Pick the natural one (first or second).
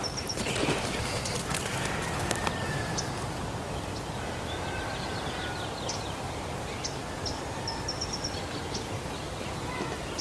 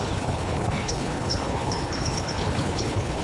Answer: first